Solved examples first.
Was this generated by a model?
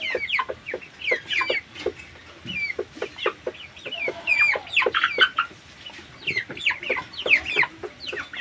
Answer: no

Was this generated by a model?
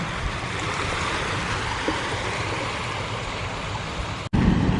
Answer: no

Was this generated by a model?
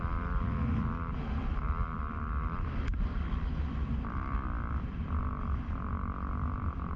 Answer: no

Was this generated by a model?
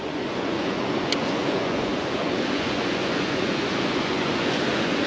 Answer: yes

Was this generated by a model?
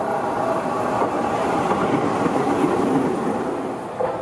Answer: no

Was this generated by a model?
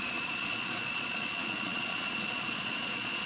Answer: yes